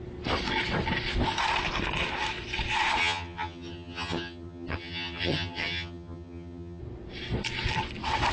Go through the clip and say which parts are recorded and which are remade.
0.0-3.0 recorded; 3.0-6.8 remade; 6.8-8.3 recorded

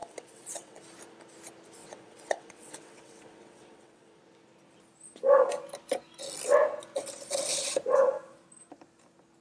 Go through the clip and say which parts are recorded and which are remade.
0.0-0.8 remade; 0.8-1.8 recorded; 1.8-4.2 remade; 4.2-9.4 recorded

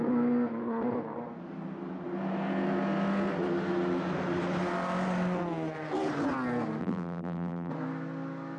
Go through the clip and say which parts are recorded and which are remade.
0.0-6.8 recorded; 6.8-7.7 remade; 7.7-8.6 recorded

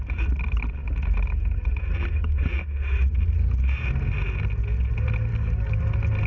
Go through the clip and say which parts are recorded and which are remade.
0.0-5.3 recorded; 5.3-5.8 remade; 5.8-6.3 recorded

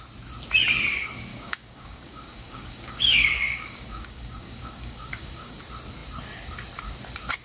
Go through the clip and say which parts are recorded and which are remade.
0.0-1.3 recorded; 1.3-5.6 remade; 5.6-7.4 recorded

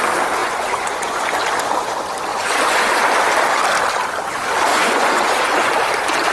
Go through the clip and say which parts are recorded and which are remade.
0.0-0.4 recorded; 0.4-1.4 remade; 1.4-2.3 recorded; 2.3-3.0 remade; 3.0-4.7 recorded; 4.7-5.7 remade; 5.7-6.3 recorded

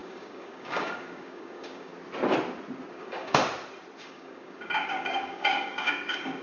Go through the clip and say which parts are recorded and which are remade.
0.0-1.9 remade; 1.9-2.9 recorded; 2.9-3.4 remade; 3.4-4.0 recorded; 4.0-6.4 remade

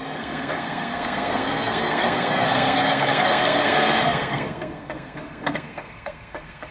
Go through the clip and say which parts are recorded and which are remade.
0.0-6.7 remade